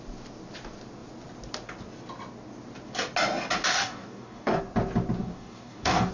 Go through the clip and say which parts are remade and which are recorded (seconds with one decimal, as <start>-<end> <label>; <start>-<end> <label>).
0.0-3.7 recorded; 3.7-4.6 remade; 4.6-5.2 recorded; 5.2-6.1 remade